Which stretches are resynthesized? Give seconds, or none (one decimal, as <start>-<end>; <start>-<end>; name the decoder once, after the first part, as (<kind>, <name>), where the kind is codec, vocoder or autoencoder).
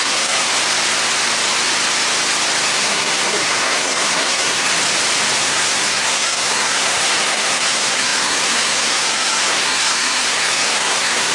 0.0-0.5 (codec, SNAC); 2.6-4.7; 5.4-11.3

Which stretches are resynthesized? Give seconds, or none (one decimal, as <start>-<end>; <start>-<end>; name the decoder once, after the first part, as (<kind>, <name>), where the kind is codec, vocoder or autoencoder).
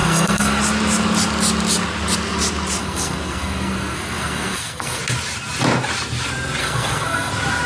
0.0-0.6 (codec, SNAC); 2.8-5.0; 6.6-7.3